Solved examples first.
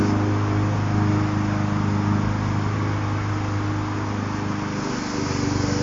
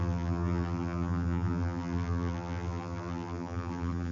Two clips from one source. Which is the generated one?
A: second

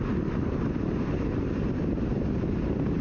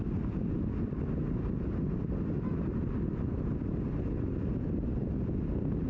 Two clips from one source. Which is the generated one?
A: first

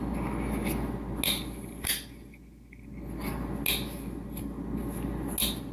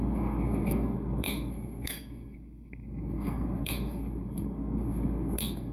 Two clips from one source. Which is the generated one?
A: second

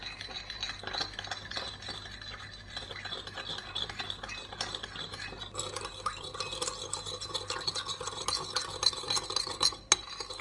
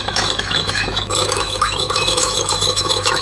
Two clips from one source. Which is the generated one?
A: second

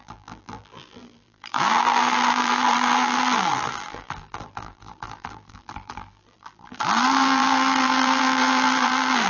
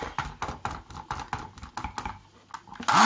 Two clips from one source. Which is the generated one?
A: first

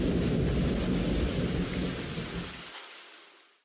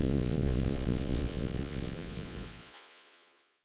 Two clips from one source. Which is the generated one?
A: second